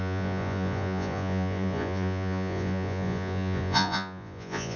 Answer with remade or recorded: remade